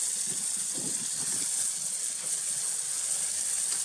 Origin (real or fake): real